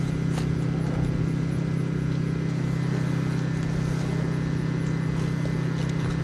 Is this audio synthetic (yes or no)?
no